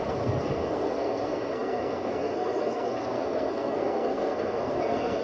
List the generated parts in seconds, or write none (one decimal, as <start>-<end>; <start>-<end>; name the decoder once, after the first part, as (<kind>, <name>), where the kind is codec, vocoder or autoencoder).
0.0-5.2 (codec, SNAC)